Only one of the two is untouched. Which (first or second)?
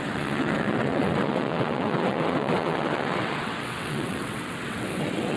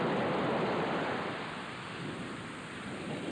second